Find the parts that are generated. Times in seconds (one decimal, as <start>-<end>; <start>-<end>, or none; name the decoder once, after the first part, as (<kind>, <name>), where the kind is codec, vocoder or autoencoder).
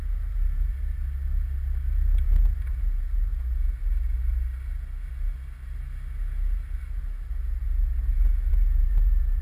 none